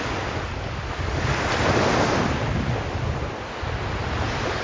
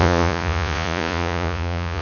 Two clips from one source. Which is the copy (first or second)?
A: second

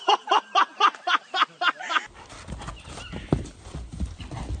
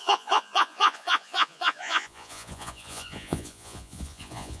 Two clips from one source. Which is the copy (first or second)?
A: second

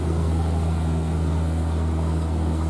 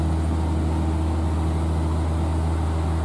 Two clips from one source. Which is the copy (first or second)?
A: first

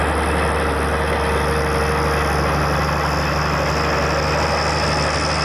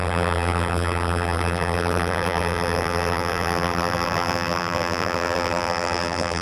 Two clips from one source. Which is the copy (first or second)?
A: second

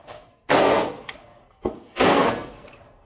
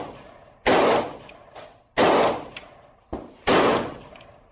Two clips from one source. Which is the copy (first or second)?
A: first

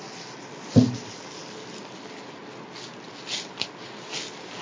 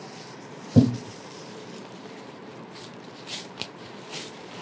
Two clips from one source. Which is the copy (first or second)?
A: second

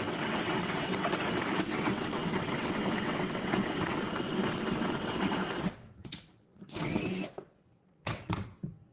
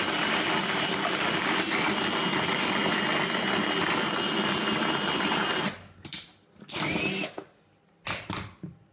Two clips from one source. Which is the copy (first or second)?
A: first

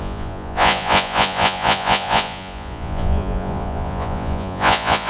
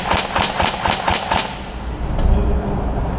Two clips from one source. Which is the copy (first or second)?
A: first